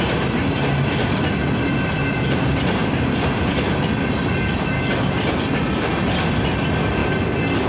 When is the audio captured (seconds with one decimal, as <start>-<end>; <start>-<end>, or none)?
0.0-2.8; 3.5-7.0